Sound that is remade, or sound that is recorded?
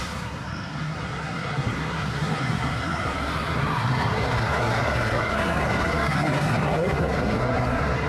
remade